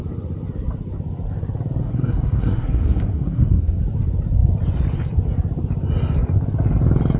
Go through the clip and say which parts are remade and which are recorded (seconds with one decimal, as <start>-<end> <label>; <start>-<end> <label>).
0.0-1.8 recorded; 1.8-3.8 remade; 3.8-7.2 recorded